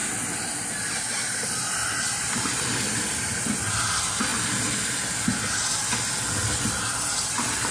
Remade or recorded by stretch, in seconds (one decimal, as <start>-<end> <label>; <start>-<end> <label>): 0.0-7.7 recorded